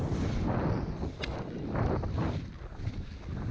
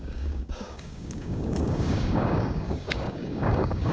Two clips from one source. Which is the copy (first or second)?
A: second